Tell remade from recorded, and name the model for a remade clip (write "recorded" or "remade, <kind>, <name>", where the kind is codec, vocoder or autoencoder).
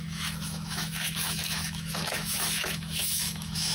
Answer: remade, autoencoder, DAC-VAE